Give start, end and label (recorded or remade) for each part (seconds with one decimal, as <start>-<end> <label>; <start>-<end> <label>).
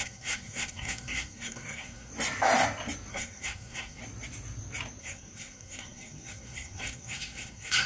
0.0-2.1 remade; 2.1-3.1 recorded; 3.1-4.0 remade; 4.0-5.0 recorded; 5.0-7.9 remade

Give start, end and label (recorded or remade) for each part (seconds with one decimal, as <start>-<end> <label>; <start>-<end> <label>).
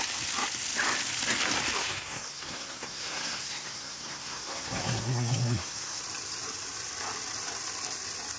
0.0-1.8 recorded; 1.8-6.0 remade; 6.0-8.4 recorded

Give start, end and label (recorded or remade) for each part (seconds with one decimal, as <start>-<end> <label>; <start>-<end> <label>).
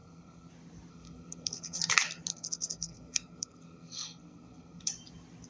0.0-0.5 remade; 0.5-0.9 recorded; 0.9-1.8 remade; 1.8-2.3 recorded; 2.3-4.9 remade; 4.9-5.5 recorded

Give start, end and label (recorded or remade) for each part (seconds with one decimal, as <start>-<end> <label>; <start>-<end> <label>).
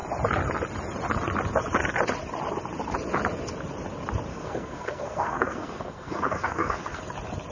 0.0-4.3 recorded; 4.3-7.0 remade; 7.0-7.5 recorded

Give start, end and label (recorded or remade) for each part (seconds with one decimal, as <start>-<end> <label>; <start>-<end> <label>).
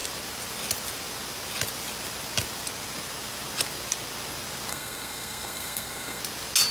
0.0-4.7 recorded; 4.7-6.2 remade; 6.2-6.7 recorded